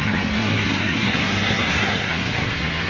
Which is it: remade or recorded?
remade